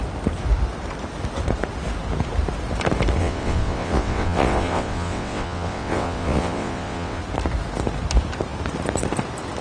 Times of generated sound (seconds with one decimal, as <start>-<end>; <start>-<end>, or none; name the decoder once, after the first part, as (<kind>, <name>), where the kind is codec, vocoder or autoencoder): 3.2-7.2 (vocoder, WaveNeXt)